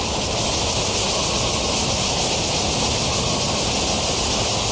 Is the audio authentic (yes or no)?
yes